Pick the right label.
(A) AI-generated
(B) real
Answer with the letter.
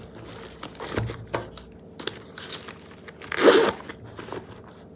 B